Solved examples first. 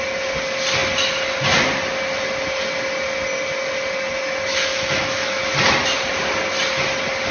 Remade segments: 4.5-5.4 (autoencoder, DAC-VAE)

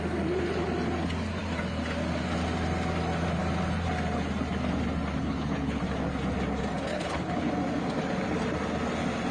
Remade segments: 5.2-5.8 (codec, HILCodec); 6.9-7.5

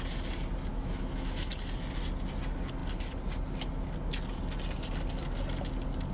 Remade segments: 0.7-1.5 (autoencoder, DAC-VAE)